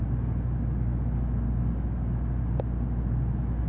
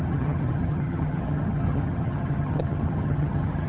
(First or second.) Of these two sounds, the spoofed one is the second